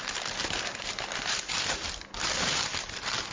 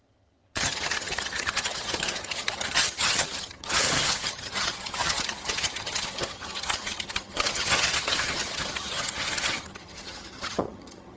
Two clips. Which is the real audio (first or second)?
first